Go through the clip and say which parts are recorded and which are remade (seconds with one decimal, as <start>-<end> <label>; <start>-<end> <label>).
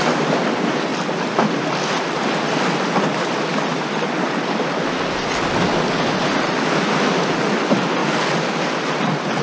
0.0-3.5 remade; 3.5-7.3 recorded; 7.3-8.0 remade; 8.0-8.6 recorded; 8.6-9.4 remade